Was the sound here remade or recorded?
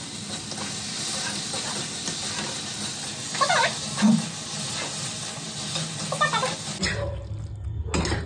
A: recorded